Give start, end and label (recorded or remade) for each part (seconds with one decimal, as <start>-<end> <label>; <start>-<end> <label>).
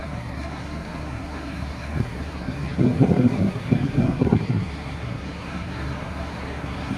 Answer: 0.0-7.0 remade